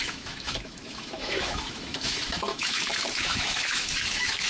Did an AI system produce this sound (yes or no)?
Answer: yes